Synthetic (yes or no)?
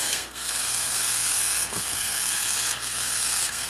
yes